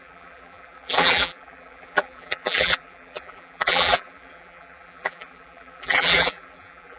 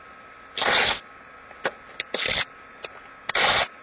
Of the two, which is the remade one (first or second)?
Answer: first